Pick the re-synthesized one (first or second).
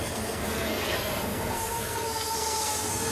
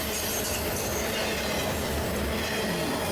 first